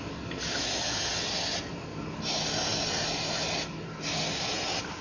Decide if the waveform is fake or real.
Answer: real